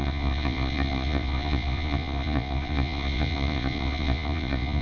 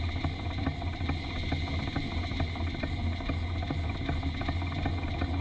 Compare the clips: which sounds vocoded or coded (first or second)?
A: first